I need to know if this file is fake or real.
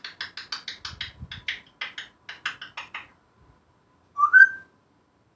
real